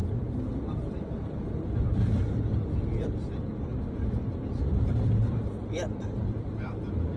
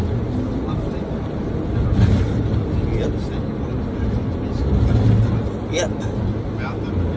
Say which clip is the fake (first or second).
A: first